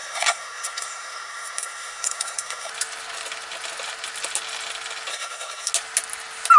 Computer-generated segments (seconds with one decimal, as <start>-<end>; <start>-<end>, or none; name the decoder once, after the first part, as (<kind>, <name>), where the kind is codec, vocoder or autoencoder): 0.0-2.7 (codec, SNAC); 5.1-5.7